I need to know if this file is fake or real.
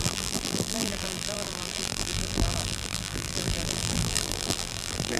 fake